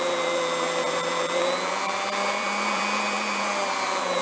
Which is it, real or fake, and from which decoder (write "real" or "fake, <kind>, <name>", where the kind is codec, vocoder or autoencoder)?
fake, vocoder, BigVGAN v2